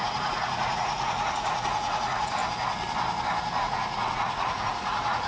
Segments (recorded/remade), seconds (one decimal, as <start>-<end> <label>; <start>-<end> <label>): 0.0-2.4 remade; 2.4-3.6 recorded; 3.6-5.3 remade